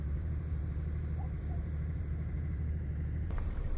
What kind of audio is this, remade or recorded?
remade